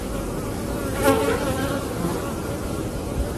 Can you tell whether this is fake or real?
real